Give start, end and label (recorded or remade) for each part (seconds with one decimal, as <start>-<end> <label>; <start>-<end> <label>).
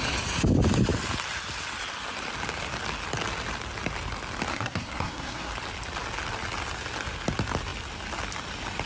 0.0-4.5 recorded; 4.5-5.5 remade; 5.5-8.9 recorded